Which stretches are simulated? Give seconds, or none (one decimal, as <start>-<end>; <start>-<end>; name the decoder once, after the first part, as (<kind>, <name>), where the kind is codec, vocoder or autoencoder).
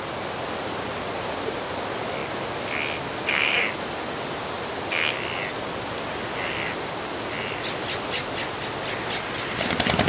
none